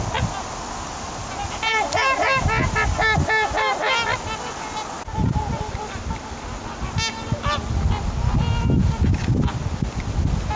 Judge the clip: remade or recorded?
recorded